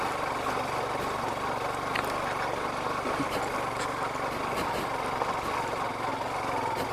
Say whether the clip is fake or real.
real